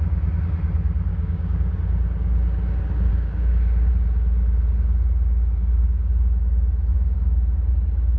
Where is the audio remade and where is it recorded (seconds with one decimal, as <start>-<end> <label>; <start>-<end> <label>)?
0.0-1.1 recorded; 1.1-1.7 remade; 1.7-3.1 recorded; 3.1-3.9 remade; 3.9-6.9 recorded; 6.9-7.7 remade; 7.7-8.2 recorded